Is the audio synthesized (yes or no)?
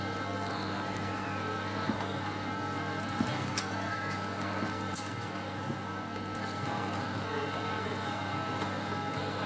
yes